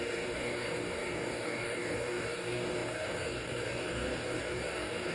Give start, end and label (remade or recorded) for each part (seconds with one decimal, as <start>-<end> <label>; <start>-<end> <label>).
0.0-5.1 remade